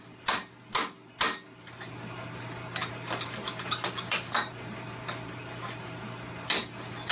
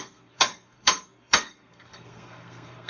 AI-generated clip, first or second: second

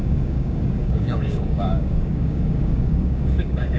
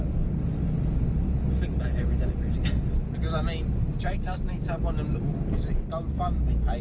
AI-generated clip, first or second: first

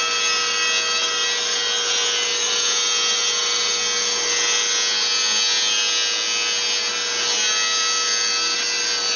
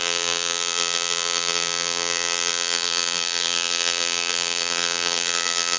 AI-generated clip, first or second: second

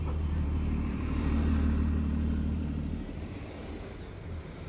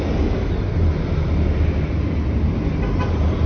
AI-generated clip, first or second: first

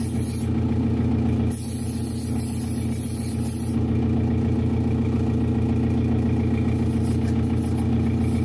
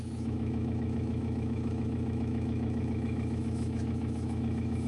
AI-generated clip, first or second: second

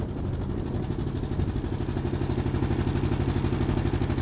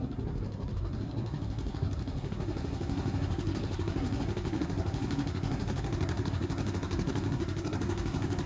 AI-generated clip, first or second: second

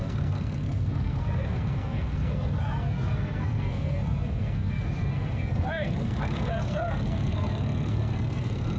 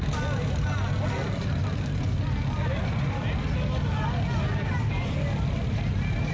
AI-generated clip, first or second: first